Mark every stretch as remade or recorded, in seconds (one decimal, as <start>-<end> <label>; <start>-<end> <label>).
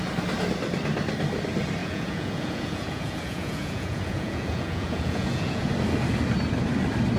0.0-1.8 recorded; 1.8-5.7 remade; 5.7-7.2 recorded